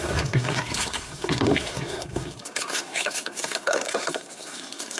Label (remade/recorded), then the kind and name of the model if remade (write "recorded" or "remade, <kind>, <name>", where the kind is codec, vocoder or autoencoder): remade, codec, SNAC